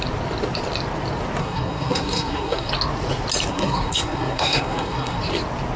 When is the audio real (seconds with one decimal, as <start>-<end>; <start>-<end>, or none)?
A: 0.0-1.4; 2.7-3.5; 5.2-5.8